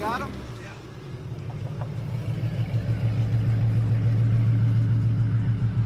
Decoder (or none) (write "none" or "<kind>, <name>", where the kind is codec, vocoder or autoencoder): none